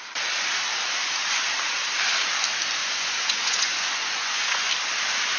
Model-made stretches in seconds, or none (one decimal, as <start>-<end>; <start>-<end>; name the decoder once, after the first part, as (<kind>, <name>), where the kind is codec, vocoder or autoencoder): 2.8-4.7 (vocoder, Vocos)